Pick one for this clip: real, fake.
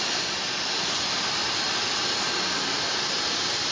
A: real